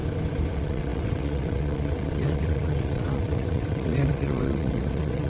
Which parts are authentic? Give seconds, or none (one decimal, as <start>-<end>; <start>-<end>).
0.0-0.5